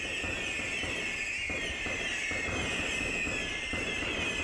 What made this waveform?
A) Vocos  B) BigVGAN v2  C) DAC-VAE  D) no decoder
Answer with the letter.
D